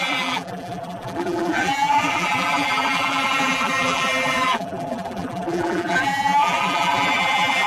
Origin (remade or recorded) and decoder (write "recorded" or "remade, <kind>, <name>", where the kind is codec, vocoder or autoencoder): remade, vocoder, BigVGAN v2